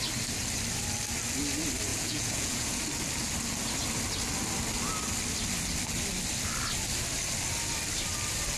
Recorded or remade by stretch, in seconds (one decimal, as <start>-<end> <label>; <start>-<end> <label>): 0.0-1.9 recorded; 1.9-2.8 remade; 2.8-8.6 recorded